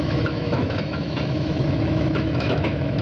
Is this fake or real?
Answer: fake